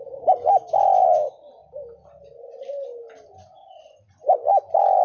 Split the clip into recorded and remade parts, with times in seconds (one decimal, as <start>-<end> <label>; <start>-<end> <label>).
0.0-5.0 recorded